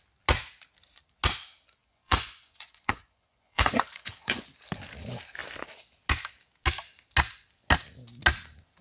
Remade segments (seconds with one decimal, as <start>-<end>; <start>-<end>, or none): 1.8-4.4